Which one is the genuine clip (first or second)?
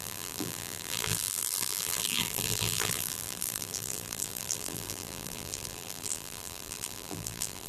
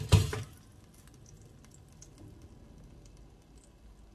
second